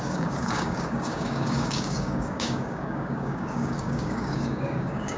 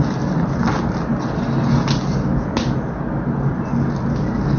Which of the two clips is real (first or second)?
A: second